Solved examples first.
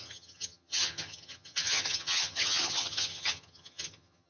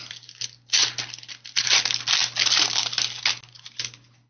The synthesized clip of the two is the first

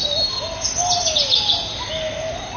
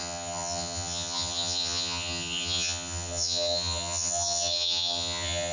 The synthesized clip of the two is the second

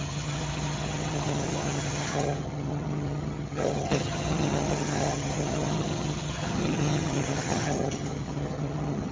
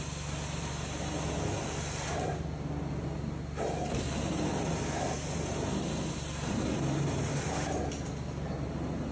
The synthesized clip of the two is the first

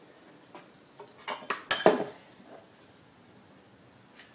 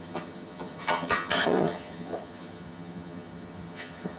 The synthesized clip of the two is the second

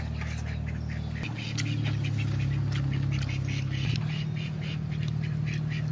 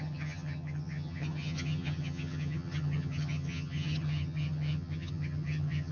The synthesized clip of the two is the second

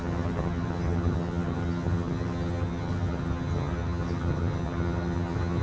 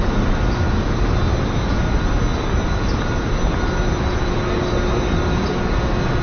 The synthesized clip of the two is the first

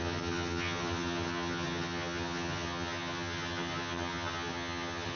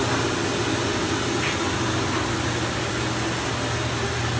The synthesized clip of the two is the first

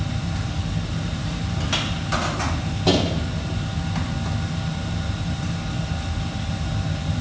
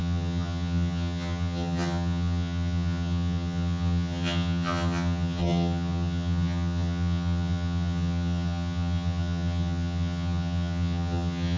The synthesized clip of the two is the second